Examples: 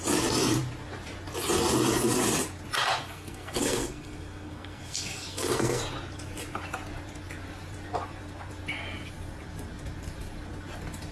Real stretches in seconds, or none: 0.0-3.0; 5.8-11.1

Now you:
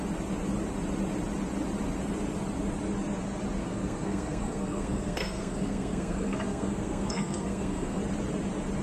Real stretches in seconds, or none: 0.0-3.6; 8.0-8.8

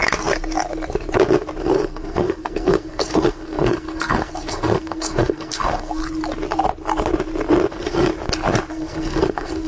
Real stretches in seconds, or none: 0.0-1.6; 6.0-7.7; 8.1-8.7

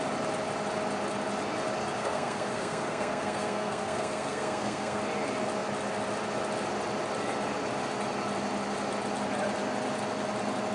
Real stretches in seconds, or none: 0.0-2.0; 5.0-10.7

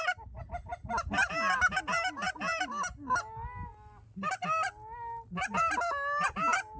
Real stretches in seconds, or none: 0.0-6.8

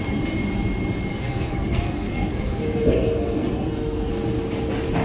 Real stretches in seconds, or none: 0.0-1.1; 4.1-5.0